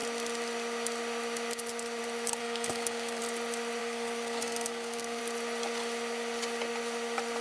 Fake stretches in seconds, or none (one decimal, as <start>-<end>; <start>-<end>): 2.4-3.2; 3.8-5.2